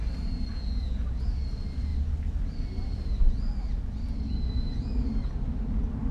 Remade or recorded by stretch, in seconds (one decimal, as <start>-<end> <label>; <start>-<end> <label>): 0.0-0.5 recorded; 0.5-1.5 remade; 1.5-6.1 recorded